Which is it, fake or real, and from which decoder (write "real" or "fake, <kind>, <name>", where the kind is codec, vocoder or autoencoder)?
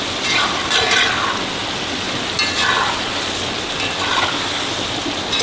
real